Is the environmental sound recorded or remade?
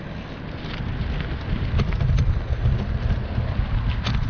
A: recorded